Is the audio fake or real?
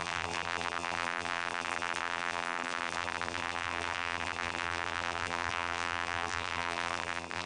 fake